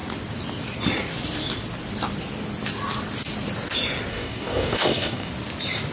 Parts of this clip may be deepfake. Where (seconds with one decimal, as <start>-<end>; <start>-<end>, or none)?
4.1-5.3